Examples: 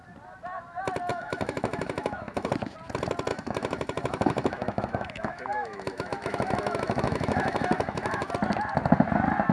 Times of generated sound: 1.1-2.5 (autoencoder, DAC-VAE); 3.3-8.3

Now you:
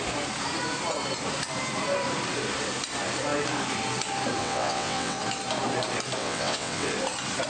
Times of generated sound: 4.4-5.2 (vocoder, WaveNeXt); 6.2-6.9